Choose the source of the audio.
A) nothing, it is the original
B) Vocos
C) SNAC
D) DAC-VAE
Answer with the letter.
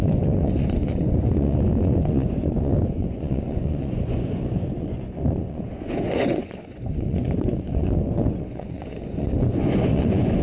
B